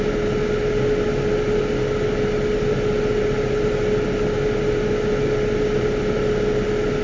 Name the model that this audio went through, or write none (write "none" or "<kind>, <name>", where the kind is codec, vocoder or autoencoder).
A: none